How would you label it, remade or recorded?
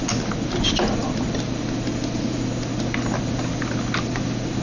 recorded